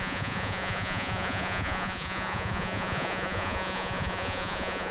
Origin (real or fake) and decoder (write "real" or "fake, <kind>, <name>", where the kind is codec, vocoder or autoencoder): fake, vocoder, Vocos